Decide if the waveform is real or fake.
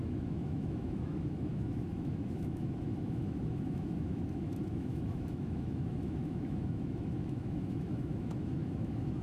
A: fake